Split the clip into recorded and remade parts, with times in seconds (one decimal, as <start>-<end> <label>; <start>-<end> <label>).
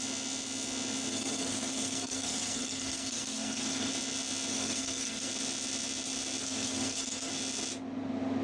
0.0-1.1 recorded; 1.1-3.9 remade; 3.9-4.5 recorded; 4.5-5.3 remade; 5.3-6.4 recorded; 6.4-7.3 remade; 7.3-8.4 recorded